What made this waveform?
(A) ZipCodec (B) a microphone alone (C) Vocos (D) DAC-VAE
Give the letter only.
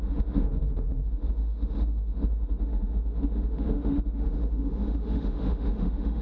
D